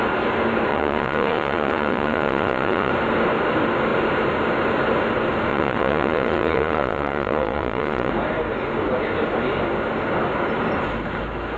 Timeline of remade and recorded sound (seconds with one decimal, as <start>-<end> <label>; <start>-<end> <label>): 0.0-0.7 recorded; 0.7-2.9 remade; 2.9-5.5 recorded; 5.5-8.1 remade; 8.1-11.6 recorded